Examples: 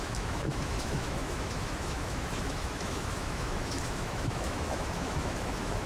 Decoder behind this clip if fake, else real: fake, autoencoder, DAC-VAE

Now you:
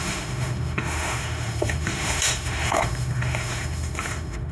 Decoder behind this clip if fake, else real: fake, autoencoder, DAC-VAE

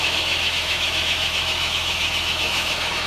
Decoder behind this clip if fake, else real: fake, autoencoder, DAC-VAE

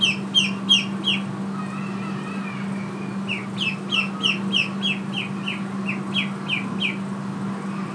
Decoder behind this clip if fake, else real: real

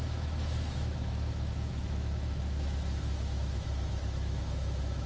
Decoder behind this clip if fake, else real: fake, autoencoder, DAC-VAE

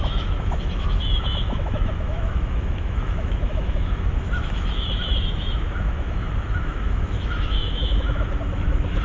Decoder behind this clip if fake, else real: fake, autoencoder, DAC-VAE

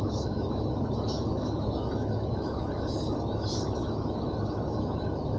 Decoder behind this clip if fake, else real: fake, autoencoder, DAC-VAE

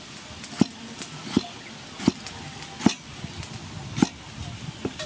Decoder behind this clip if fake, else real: real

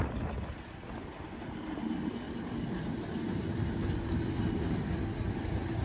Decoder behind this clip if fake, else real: real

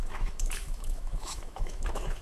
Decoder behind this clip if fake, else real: fake, autoencoder, DAC-VAE